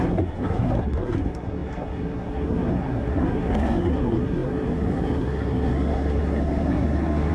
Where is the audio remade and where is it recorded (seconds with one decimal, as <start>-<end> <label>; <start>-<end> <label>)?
0.0-7.3 remade